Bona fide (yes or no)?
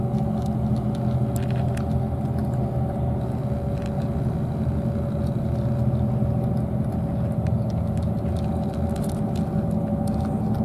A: yes